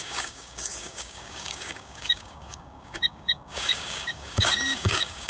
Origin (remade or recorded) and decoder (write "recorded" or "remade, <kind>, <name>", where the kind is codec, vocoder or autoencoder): remade, codec, DAC